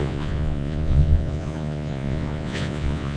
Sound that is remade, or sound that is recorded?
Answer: remade